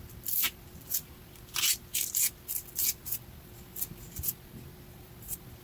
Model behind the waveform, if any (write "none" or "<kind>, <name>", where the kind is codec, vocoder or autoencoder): none